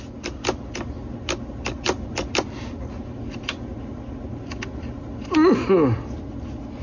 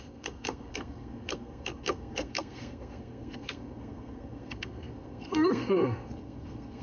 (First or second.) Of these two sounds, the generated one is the second